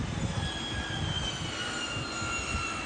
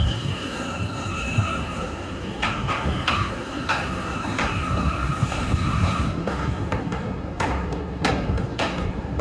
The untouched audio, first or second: first